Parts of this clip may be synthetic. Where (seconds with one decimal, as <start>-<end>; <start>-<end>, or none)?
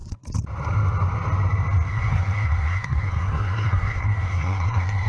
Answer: 1.9-5.1